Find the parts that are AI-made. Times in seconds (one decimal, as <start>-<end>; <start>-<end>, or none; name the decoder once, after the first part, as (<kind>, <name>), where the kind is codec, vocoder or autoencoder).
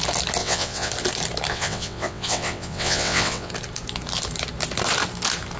0.4-0.9 (vocoder, WaveNeXt); 1.5-3.5